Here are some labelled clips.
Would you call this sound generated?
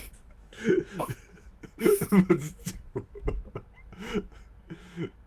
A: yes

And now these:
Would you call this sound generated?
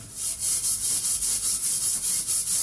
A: no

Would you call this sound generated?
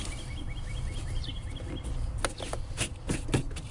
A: no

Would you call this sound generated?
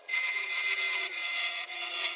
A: yes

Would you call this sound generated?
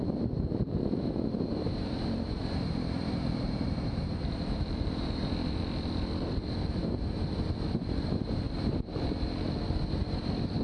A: yes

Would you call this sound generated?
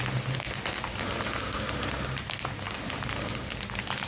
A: no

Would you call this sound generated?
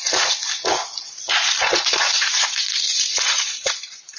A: yes